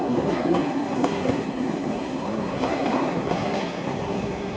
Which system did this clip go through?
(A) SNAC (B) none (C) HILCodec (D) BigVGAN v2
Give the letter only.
A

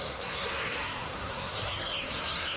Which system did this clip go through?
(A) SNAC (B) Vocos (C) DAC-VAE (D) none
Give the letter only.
A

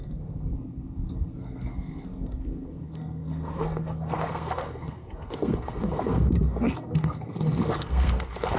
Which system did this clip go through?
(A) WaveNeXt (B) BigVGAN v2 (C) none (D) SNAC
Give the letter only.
D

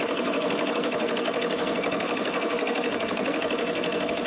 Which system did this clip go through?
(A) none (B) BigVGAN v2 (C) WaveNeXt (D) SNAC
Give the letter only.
D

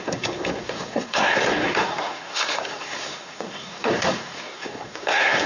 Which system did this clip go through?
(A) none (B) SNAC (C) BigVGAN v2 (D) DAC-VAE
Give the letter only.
B